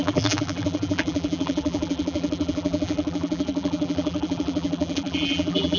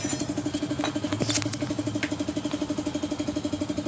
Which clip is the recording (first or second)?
second